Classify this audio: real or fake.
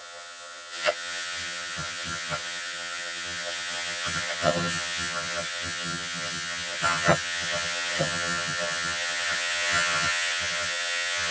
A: fake